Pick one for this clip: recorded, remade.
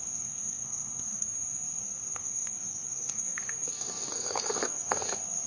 remade